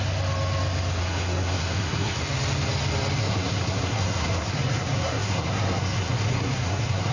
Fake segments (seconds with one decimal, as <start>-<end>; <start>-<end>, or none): 1.0-2.2; 3.2-7.1